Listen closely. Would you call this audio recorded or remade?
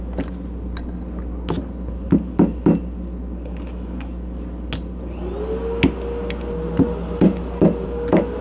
recorded